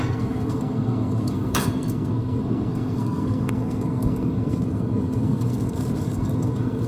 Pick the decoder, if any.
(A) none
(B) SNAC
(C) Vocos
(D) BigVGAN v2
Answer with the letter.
B